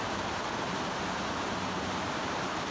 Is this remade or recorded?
remade